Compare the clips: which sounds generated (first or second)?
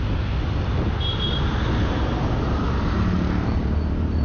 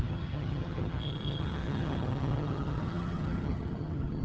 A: second